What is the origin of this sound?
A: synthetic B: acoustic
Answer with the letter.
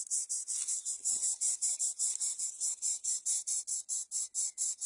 B